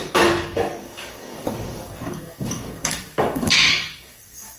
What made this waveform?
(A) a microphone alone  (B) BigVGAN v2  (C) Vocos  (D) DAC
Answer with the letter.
D